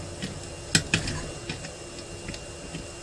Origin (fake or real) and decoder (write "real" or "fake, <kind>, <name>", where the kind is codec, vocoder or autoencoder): real